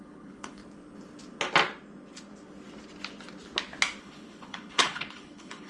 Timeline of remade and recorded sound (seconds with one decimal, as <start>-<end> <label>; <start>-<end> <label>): 0.0-0.6 remade; 0.6-4.0 recorded; 4.0-5.7 remade